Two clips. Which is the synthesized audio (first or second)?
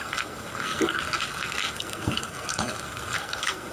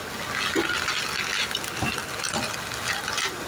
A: first